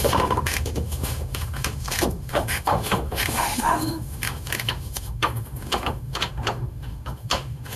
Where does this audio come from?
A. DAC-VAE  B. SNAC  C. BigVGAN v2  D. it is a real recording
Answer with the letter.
A